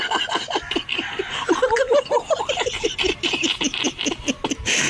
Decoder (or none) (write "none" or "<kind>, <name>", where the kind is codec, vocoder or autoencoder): none